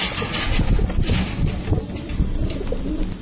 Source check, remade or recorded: recorded